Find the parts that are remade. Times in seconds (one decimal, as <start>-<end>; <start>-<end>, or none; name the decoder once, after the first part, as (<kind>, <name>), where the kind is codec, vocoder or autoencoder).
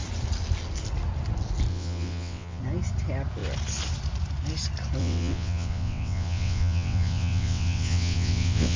1.7-2.6 (vocoder, WaveNeXt); 5.0-8.8